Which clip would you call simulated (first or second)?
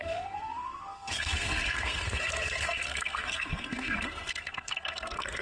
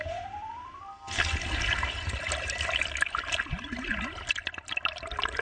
first